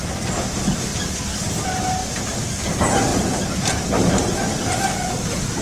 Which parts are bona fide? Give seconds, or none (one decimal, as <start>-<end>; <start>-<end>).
0.0-0.9; 1.6-2.0; 2.6-3.1